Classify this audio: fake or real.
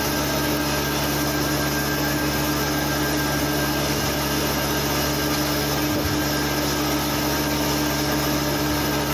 real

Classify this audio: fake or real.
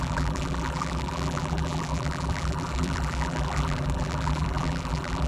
fake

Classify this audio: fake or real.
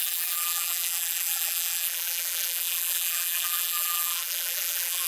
fake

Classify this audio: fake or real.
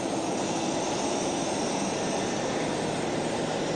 real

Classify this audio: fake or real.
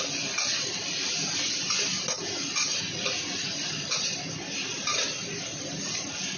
real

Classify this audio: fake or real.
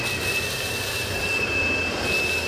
real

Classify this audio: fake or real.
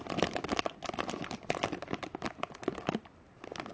real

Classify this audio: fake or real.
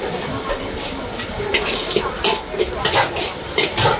fake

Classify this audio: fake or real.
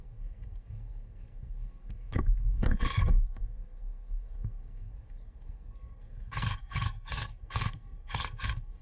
fake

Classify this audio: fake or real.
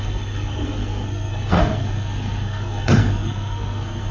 fake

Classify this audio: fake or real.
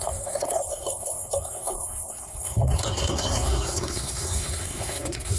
fake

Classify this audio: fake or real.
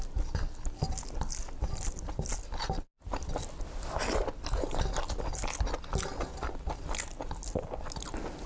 real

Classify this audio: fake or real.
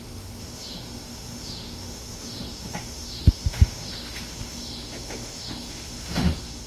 fake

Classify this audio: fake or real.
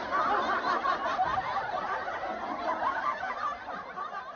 real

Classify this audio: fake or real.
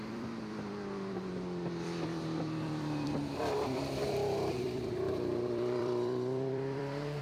fake